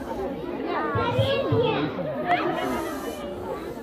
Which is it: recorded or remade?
recorded